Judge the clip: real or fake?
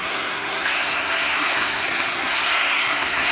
fake